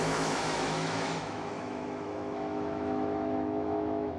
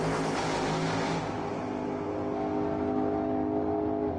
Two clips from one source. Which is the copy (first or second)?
first